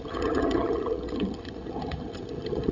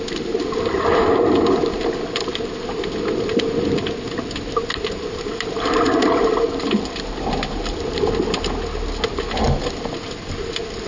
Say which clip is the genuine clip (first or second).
second